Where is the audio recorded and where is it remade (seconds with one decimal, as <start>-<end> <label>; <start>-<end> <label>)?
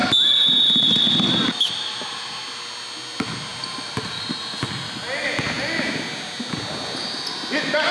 0.0-7.9 recorded